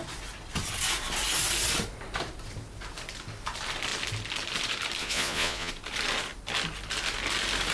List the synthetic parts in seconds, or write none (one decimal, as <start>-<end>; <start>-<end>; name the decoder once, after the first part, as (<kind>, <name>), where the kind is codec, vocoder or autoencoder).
5.0-5.7 (vocoder, Vocos)